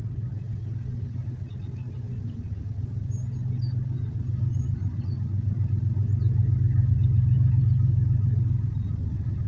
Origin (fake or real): real